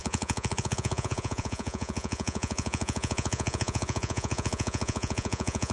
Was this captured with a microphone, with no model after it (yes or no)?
no